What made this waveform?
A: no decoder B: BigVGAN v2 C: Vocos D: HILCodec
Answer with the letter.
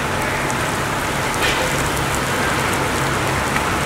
A